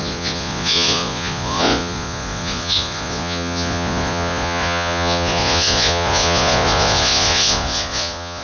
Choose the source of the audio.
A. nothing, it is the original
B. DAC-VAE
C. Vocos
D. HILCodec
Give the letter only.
C